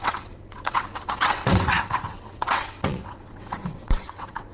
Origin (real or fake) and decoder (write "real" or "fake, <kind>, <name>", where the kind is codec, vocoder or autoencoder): fake, vocoder, WaveNeXt